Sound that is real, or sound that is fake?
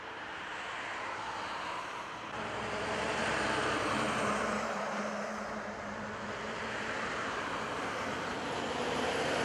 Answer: fake